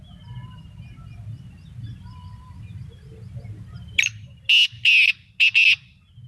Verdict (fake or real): real